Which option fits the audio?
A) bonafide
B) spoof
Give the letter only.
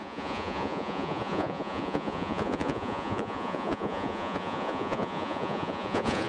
B